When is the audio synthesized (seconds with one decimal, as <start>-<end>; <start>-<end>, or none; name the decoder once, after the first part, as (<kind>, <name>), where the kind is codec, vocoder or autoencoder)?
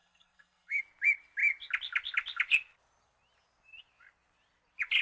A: 0.0-0.8 (codec, SNAC)